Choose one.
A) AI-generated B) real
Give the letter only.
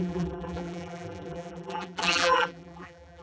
A